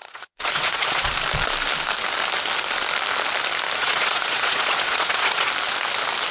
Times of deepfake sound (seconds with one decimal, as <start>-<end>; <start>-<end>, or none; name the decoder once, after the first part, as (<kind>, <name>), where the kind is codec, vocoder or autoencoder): 0.0-1.1 (vocoder, Vocos); 3.8-5.5